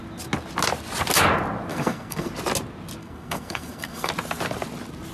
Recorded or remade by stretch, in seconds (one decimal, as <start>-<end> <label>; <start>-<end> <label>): 0.0-1.7 recorded; 1.7-2.3 remade; 2.3-3.0 recorded; 3.0-4.1 remade; 4.1-5.1 recorded

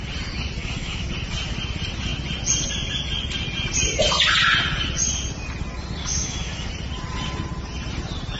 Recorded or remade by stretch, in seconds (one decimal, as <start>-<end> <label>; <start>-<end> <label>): 0.0-0.6 recorded; 0.6-1.1 remade; 1.1-6.0 recorded; 6.0-6.7 remade; 6.7-8.4 recorded

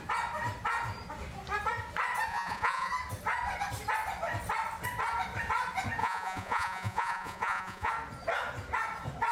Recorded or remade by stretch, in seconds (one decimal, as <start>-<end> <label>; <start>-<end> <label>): 0.0-2.3 recorded; 2.3-2.9 remade; 2.9-6.0 recorded; 6.0-7.9 remade; 7.9-9.3 recorded

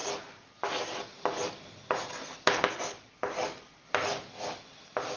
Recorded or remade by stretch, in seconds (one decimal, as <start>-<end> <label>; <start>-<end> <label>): 0.0-5.2 recorded

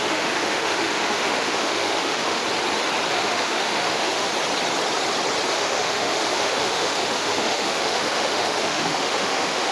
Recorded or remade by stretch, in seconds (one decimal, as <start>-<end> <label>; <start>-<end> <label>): 0.0-2.4 remade; 2.4-3.1 recorded; 3.1-4.3 remade; 4.3-5.5 recorded; 5.5-9.7 remade

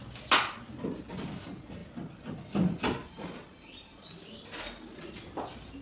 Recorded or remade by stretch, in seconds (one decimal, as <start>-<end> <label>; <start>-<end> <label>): 0.0-5.8 recorded